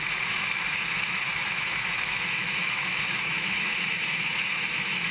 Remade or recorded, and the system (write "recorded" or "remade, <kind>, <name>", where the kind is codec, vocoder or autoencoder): remade, autoencoder, DAC-VAE